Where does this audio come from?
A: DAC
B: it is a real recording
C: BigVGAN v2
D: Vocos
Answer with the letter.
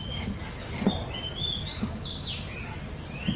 B